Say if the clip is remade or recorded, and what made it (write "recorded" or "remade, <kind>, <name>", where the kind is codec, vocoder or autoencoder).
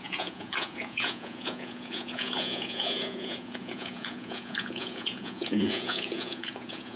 remade, vocoder, Vocos